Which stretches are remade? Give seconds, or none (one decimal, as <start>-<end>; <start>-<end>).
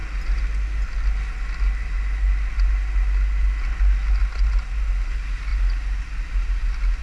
none